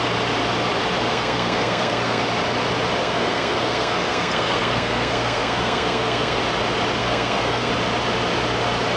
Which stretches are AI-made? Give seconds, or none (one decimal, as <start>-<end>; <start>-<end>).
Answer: 1.1-2.2; 3.0-6.4; 7.0-7.7